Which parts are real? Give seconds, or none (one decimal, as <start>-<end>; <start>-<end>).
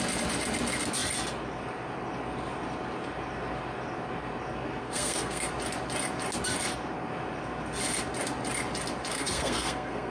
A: 0.0-4.8; 5.5-9.1